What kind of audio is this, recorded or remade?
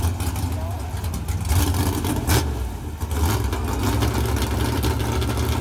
recorded